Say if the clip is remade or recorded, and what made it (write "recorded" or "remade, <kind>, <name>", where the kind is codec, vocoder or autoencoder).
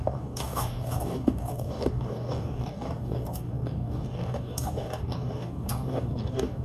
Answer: remade, codec, DAC